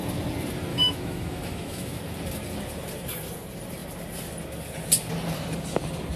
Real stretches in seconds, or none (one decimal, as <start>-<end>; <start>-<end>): 0.0-0.7; 2.0-6.2